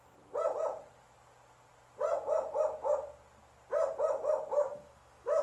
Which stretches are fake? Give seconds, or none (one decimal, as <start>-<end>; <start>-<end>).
4.7-5.4